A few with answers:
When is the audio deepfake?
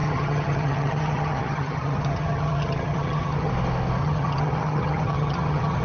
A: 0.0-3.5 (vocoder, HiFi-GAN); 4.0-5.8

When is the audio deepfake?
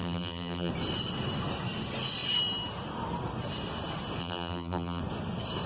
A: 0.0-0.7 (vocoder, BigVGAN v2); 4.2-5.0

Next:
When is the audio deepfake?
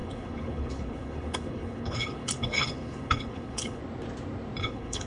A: 0.0-3.8 (codec, HILCodec); 4.6-5.1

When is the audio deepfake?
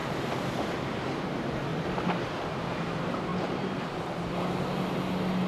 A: 0.0-0.8 (vocoder, BigVGAN v2); 1.7-2.5; 3.3-4.0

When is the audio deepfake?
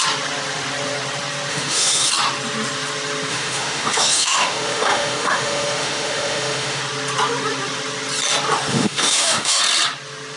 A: 1.5-2.1 (autoencoder, DAC-VAE); 3.3-6.8; 8.7-9.6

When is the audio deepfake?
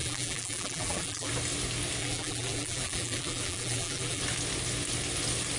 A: 0.0-1.3 (vocoder, BigVGAN v2); 2.0-4.2